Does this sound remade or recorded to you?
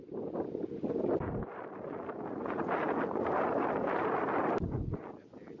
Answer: recorded